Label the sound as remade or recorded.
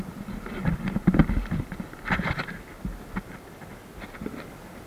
recorded